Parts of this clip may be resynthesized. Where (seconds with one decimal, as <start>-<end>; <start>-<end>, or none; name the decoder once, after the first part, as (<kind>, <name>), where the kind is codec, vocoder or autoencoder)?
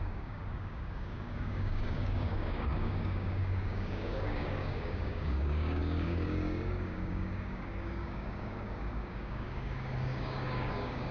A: 0.0-11.1 (codec, DAC)